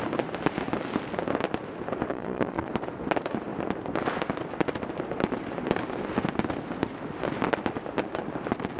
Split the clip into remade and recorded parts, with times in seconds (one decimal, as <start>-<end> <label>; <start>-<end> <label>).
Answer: 0.0-2.1 recorded; 2.1-2.7 remade; 2.7-8.8 recorded